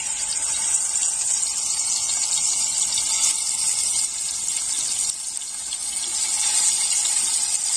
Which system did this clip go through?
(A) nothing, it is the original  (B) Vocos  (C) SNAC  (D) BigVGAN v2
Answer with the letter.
A